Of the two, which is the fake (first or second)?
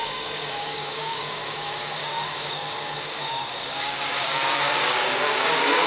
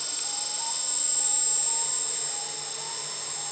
first